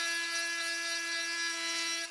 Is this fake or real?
real